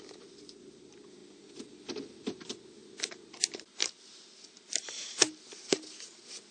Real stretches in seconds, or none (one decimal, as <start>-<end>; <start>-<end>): 0.0-6.5